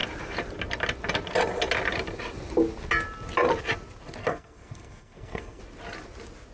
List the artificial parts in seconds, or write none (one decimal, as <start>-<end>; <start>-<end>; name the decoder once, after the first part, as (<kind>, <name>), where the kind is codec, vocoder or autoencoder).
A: 4.2-5.6 (codec, SNAC)